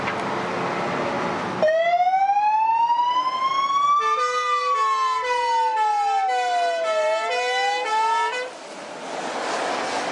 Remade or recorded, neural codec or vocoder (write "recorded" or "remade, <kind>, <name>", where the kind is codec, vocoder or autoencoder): recorded